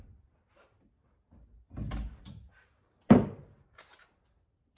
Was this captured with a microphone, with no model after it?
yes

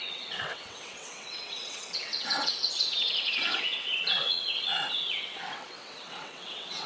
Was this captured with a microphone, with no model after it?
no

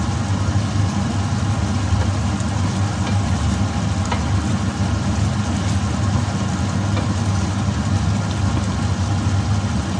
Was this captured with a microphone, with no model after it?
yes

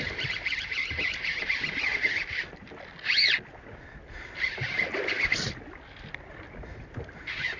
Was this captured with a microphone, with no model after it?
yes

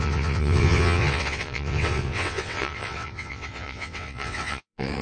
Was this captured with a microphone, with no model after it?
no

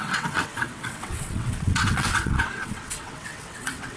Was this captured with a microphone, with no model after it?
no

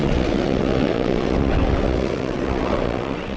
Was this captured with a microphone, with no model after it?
no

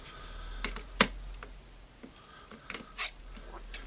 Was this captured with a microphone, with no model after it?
yes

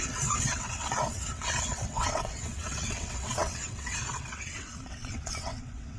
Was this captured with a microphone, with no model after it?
no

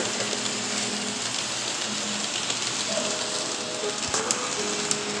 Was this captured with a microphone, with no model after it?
yes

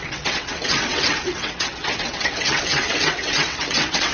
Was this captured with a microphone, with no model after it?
no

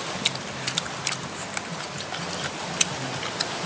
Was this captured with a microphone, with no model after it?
yes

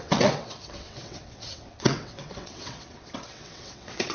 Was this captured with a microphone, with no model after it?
no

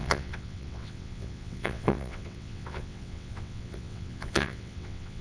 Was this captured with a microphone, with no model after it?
no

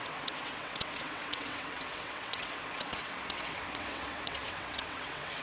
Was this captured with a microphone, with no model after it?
no